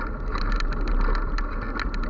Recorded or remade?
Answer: recorded